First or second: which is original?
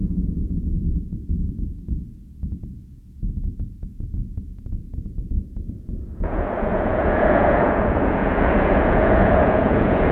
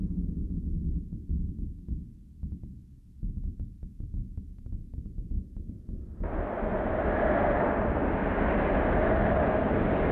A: second